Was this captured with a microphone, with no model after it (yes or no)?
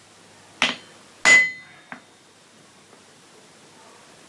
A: yes